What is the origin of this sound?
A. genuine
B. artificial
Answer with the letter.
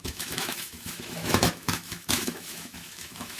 B